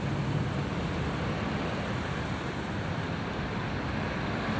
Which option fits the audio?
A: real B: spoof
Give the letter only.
B